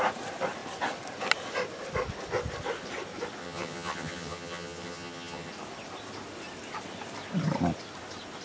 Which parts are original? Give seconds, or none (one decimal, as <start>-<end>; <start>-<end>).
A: 0.0-3.4; 5.5-8.4